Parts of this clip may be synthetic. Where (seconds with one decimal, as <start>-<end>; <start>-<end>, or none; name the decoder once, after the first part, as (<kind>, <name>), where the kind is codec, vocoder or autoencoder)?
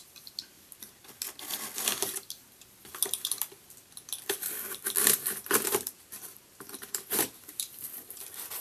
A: 3.0-3.7 (vocoder, BigVGAN v2); 5.0-8.6